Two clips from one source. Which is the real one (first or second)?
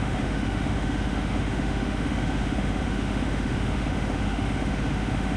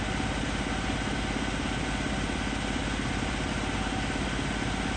second